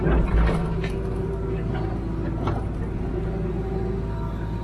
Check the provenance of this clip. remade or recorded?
recorded